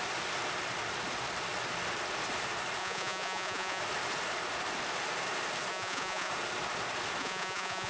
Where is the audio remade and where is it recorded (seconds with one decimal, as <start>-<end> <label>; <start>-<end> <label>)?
0.0-2.8 recorded; 2.8-3.8 remade; 3.8-5.7 recorded; 5.7-6.3 remade; 6.3-7.2 recorded; 7.2-7.9 remade